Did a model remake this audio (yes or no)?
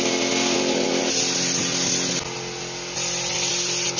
no